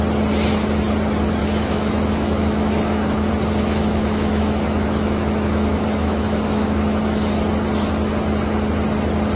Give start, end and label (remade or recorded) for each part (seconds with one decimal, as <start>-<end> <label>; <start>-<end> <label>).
0.0-1.4 recorded; 1.4-3.3 remade; 3.3-3.7 recorded; 3.7-7.3 remade; 7.3-9.4 recorded